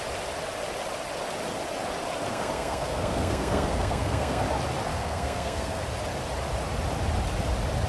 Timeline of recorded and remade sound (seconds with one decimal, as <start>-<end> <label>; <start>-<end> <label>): 0.0-2.3 recorded; 2.3-4.4 remade; 4.4-4.9 recorded; 4.9-5.8 remade; 5.8-7.9 recorded